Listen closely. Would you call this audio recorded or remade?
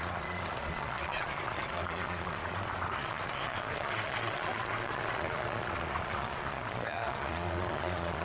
remade